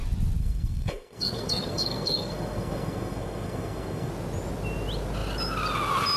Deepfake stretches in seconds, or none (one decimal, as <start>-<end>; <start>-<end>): 0.4-4.1